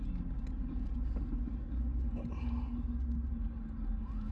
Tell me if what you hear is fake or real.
real